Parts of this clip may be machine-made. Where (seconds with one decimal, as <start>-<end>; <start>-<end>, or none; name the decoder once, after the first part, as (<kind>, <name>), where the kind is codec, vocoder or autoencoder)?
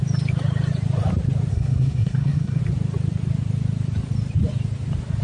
1.5-2.6 (codec, SNAC)